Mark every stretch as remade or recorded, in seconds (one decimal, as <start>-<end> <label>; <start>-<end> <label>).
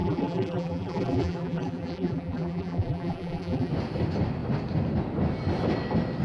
0.0-3.7 remade; 3.7-6.2 recorded